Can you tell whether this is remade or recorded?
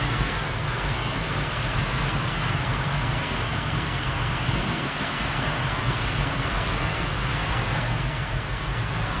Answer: remade